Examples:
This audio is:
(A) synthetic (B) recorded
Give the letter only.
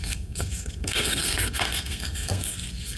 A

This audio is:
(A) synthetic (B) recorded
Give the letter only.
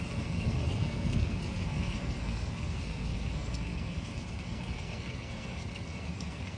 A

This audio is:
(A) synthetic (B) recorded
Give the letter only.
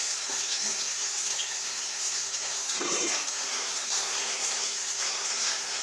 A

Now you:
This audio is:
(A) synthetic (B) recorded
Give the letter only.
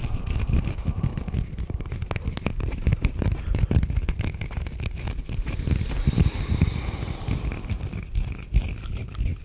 B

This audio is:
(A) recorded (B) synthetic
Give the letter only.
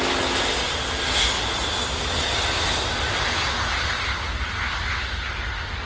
A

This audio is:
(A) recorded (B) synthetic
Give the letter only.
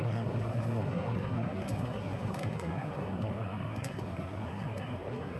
B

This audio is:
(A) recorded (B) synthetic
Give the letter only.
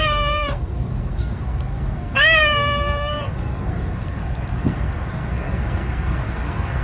B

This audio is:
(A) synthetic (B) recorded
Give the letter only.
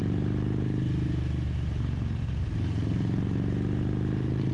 B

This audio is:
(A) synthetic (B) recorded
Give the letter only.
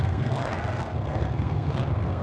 A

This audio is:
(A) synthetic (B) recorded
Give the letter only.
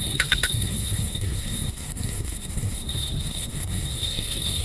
A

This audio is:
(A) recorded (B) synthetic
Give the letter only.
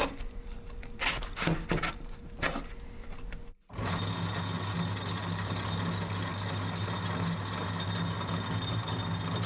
A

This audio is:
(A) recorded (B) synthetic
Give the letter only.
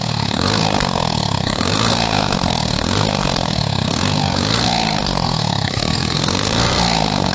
B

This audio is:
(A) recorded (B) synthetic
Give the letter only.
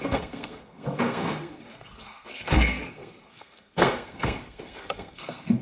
B